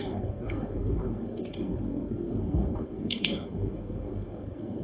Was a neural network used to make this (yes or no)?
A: yes